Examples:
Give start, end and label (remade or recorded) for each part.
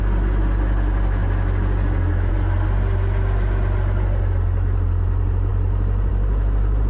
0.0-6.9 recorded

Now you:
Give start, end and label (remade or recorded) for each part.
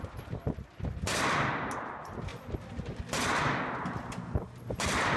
0.0-5.2 recorded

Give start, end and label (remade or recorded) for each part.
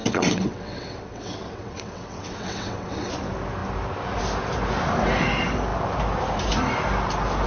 0.0-3.1 remade; 3.1-7.5 recorded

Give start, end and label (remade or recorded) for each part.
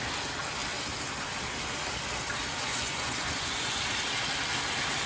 0.0-2.6 recorded; 2.6-3.8 remade; 3.8-5.1 recorded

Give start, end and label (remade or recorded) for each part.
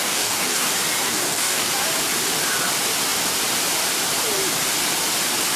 0.0-0.7 remade; 0.7-1.1 recorded; 1.1-1.7 remade; 1.7-5.6 recorded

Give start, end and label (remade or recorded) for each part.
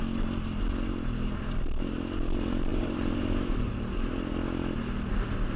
0.0-2.7 recorded; 2.7-3.7 remade; 3.7-5.6 recorded